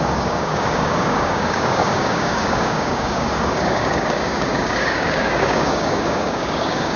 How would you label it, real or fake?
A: fake